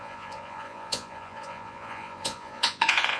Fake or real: fake